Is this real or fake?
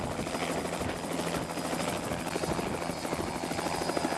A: real